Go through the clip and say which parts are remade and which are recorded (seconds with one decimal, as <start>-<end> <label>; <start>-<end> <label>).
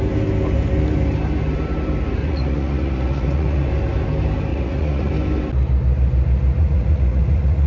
0.0-2.2 recorded; 2.2-3.7 remade; 3.7-4.5 recorded; 4.5-5.1 remade; 5.1-6.6 recorded; 6.6-7.7 remade